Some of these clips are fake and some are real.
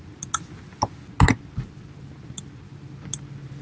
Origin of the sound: real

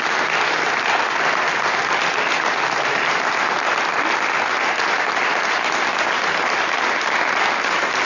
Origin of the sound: real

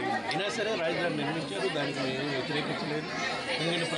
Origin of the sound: real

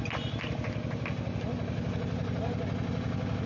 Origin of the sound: real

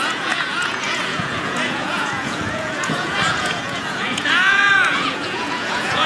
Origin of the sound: fake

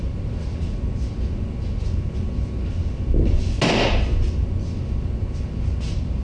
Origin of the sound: real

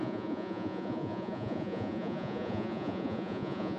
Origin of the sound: fake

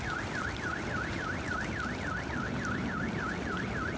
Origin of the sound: real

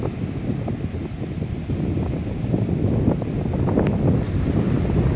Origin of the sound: real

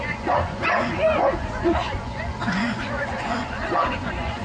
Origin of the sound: fake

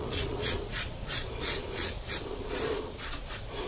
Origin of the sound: fake